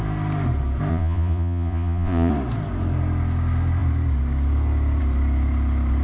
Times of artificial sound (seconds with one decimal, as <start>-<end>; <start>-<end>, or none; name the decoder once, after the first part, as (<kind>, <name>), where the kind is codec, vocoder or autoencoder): 0.9-2.3 (vocoder, Vocos)